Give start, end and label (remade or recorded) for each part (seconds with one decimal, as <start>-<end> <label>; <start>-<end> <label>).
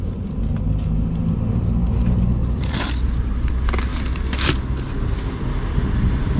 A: 0.0-2.4 recorded; 2.4-3.5 remade; 3.5-6.4 recorded